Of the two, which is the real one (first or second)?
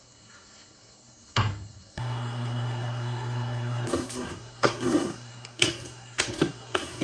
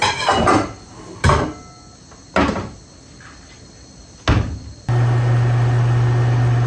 second